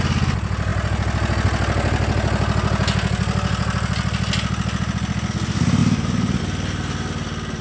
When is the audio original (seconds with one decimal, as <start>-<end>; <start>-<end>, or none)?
0.0-7.6